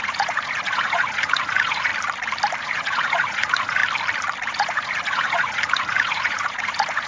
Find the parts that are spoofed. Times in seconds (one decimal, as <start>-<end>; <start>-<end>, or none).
0.0-1.9; 2.6-3.8; 4.5-7.1